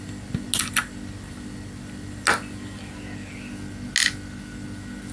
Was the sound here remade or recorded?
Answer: recorded